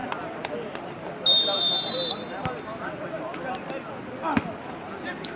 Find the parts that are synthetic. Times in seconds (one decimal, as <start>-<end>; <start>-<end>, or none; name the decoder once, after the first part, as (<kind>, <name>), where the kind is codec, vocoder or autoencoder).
0.0-3.3 (vocoder, BigVGAN v2); 4.0-5.4